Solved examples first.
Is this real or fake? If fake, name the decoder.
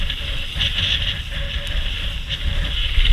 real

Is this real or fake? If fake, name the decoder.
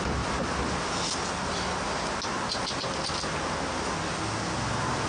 real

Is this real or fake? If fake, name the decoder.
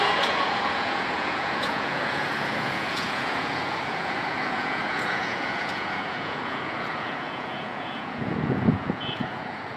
fake, vocoder, Vocos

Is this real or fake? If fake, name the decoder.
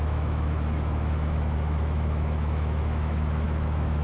fake, autoencoder, DAC-VAE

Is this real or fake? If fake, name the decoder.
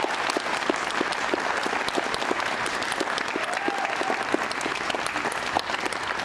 real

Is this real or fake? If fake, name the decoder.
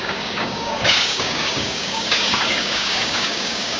fake, codec, DAC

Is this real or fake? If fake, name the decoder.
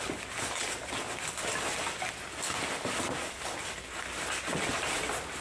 real